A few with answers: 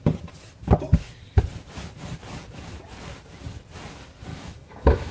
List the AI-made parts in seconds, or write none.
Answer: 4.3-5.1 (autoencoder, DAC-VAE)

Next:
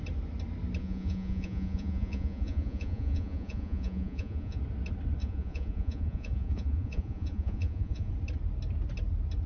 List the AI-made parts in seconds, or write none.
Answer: 0.8-4.6 (vocoder, Vocos); 5.2-8.1